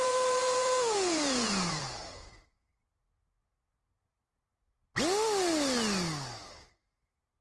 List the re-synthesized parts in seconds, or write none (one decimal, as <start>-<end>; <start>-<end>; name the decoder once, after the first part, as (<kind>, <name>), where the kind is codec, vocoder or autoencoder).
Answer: 0.0-2.7 (vocoder, Vocos)